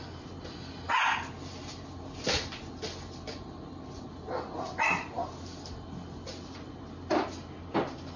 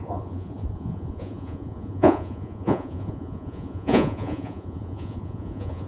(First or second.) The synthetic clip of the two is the second